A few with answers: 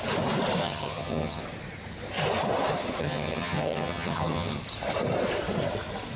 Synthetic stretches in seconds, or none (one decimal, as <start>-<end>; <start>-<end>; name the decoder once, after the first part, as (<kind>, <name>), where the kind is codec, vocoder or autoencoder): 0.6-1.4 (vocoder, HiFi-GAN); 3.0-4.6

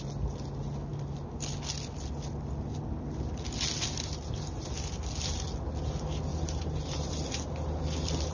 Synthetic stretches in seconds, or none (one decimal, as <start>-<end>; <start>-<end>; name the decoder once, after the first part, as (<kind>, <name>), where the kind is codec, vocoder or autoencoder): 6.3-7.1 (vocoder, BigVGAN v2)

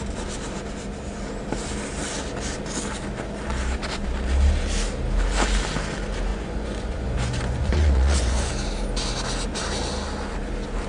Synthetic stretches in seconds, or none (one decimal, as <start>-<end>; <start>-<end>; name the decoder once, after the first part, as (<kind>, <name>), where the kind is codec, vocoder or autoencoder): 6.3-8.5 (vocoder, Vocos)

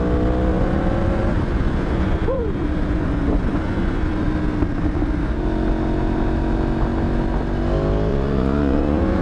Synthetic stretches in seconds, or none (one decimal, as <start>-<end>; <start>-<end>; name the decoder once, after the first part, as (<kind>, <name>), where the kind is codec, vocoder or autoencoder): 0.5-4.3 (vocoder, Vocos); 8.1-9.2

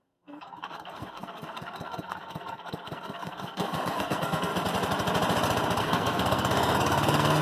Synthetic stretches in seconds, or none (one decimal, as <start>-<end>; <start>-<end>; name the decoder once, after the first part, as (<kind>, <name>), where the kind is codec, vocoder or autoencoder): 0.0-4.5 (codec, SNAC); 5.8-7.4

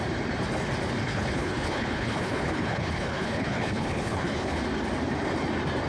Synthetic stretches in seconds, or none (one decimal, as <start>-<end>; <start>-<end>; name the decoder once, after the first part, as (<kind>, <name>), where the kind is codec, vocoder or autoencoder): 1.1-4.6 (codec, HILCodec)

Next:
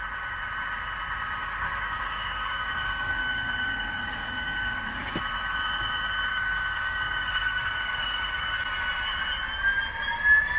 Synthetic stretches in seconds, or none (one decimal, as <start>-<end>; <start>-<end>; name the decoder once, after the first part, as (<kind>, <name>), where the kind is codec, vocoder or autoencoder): 1.4-5.2 (codec, DAC); 6.3-8.6

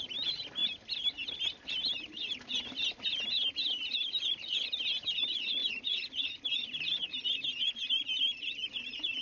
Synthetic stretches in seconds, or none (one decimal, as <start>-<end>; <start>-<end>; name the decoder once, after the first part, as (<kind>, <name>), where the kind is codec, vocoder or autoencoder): none